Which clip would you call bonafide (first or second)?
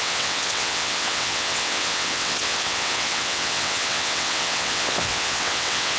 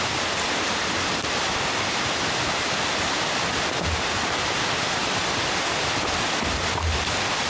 second